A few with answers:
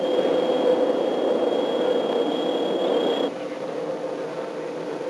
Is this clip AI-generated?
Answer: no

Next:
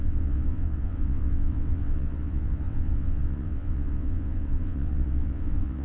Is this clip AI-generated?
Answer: yes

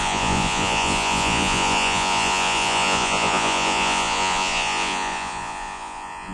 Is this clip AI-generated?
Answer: yes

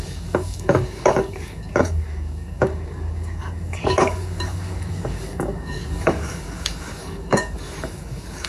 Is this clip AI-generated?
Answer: yes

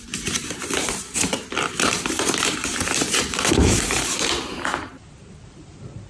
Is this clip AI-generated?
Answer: yes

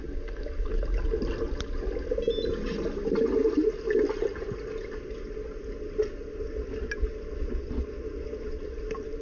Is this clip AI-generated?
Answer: no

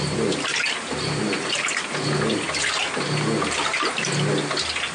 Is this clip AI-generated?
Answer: no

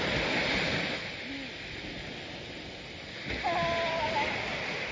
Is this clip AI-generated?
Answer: no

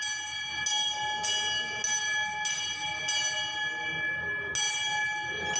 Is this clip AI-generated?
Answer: no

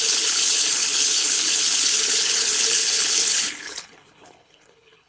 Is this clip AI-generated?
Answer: yes